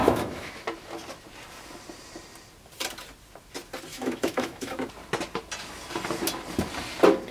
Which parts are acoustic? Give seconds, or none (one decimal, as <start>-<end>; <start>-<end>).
0.5-3.9; 4.9-7.3